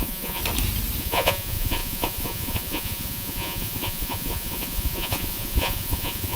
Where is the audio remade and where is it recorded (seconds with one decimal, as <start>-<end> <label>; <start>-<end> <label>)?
0.0-0.4 remade; 0.4-1.0 recorded; 1.0-6.4 remade